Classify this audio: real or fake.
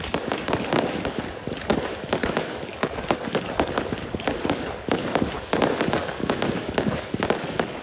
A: fake